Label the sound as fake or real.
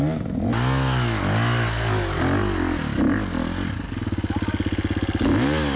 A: real